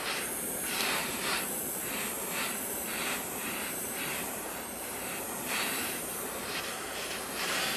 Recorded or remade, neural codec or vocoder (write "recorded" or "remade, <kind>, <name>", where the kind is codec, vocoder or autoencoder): remade, vocoder, BigVGAN v2